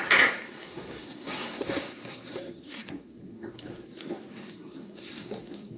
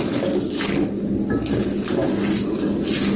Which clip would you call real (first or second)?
second